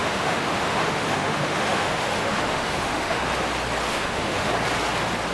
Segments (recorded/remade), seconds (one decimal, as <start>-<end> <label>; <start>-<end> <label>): 0.0-3.2 remade; 3.2-3.9 recorded; 3.9-4.5 remade; 4.5-5.3 recorded